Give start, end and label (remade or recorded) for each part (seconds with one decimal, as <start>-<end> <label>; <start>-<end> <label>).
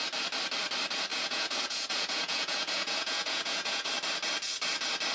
0.0-1.1 recorded; 1.1-3.9 remade; 3.9-5.1 recorded